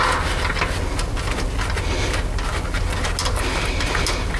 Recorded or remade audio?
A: recorded